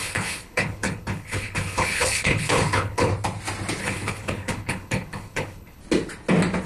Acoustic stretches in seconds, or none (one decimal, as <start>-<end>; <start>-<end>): 3.1-3.8; 5.8-6.7